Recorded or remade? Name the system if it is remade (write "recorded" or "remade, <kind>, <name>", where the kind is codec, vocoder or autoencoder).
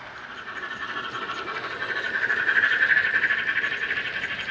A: recorded